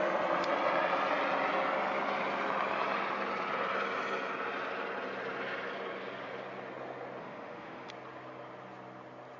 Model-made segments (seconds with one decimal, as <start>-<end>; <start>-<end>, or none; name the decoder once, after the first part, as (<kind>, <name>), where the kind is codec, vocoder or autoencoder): 7.2-7.9 (autoencoder, DAC-VAE)